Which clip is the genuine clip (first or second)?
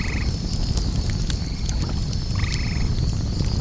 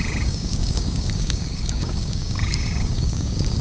first